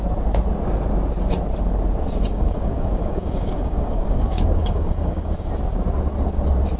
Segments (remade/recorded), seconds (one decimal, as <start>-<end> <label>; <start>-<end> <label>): 0.0-2.3 recorded; 2.3-5.5 remade; 5.5-6.8 recorded